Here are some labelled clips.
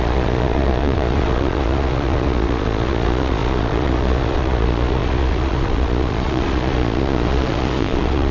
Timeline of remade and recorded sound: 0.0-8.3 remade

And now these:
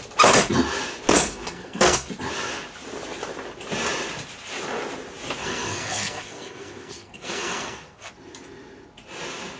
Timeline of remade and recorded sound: 0.0-1.1 recorded; 1.1-2.1 remade; 2.1-5.4 recorded; 5.4-8.1 remade; 8.1-9.6 recorded